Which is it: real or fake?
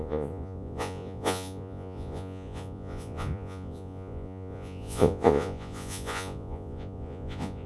fake